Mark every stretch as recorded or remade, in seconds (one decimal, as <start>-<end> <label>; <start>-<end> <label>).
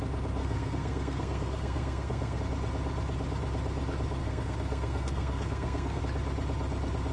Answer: 0.0-0.4 recorded; 0.4-2.4 remade; 2.4-4.2 recorded; 4.2-6.0 remade; 6.0-7.1 recorded